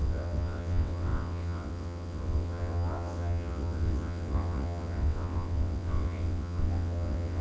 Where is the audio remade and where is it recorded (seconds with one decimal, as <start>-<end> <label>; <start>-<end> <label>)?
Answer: 0.0-7.4 remade